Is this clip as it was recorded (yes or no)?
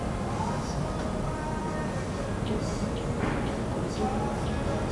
yes